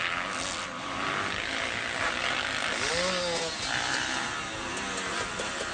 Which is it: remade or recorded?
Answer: recorded